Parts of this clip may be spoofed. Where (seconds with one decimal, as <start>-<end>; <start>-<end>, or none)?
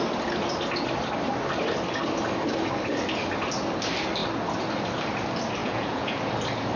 5.6-6.2